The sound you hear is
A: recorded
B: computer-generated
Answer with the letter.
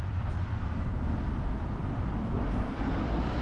B